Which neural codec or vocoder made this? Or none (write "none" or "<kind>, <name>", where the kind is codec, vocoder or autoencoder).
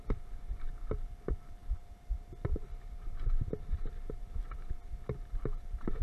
none